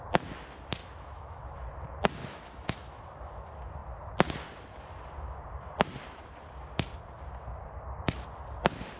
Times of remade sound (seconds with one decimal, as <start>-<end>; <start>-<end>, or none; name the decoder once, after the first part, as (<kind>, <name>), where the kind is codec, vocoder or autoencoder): 0.8-1.4 (autoencoder, DAC-VAE); 2.2-3.0